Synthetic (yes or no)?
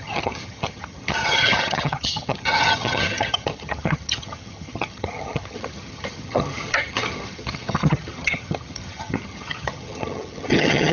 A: yes